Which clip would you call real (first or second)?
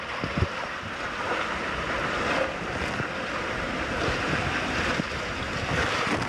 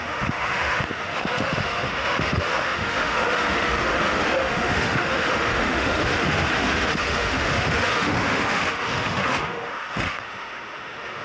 first